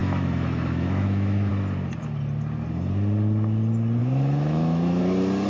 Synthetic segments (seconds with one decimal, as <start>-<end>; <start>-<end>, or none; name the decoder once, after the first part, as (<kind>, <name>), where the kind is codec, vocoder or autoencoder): 0.0-1.5 (autoencoder, DAC-VAE); 4.0-5.0